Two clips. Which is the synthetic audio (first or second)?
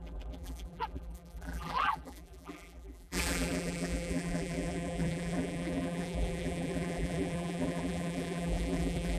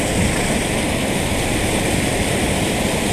first